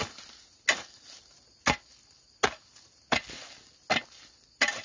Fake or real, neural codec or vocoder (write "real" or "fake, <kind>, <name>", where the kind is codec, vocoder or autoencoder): real